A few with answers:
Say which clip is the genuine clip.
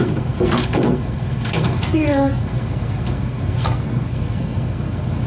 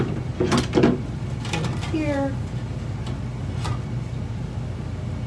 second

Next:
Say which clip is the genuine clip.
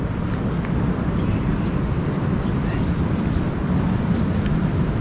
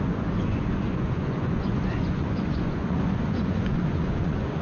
first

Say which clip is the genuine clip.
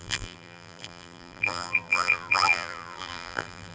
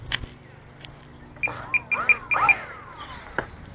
second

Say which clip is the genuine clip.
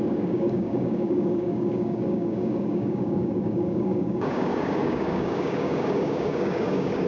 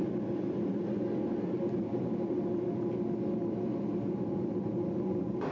second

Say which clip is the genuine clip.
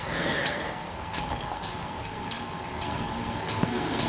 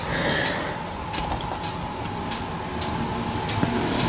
second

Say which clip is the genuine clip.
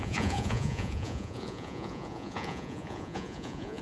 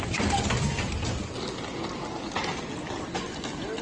second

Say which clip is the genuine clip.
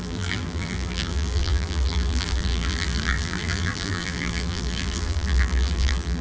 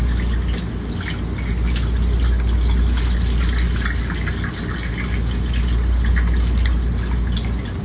second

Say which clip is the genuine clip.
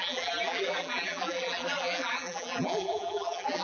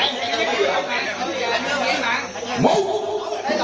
second